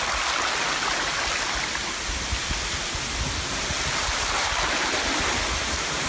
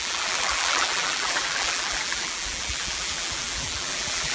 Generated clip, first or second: second